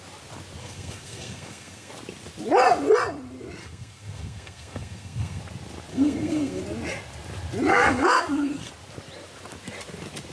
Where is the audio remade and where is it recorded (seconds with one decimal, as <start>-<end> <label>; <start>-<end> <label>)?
0.0-0.6 recorded; 0.6-1.9 remade; 1.9-3.6 recorded; 3.6-5.4 remade; 5.4-5.9 recorded; 5.9-6.6 remade; 6.6-7.7 recorded; 7.7-8.7 remade; 8.7-10.3 recorded